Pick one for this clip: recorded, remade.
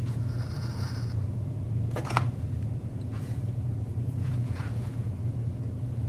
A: remade